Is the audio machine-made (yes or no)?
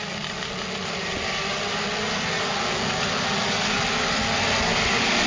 no